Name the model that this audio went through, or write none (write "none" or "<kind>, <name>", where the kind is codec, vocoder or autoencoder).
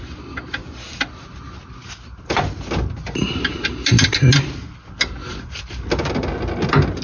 none